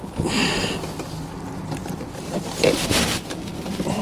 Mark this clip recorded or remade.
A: remade